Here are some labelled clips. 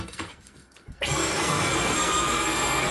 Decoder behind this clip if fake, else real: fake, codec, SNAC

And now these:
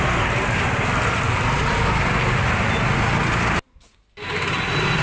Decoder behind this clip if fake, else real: real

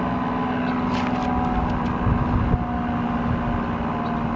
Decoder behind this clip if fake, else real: real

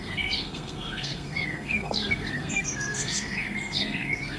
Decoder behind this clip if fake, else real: fake, codec, SNAC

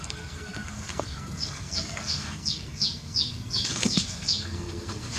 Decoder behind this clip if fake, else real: fake, codec, SNAC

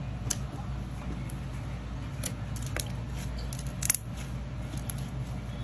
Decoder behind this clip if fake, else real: real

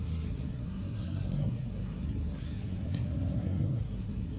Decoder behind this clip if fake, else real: fake, codec, SNAC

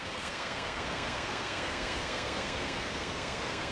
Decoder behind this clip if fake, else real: fake, codec, SNAC